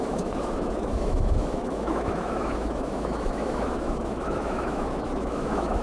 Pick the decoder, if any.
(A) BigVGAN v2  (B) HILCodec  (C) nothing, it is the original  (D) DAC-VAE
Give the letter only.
D